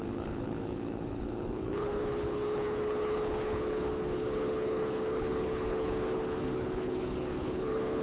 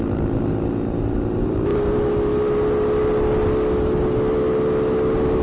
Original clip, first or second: second